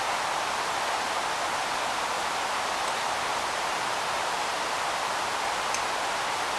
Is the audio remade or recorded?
recorded